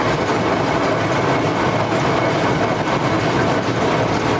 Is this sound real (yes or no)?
yes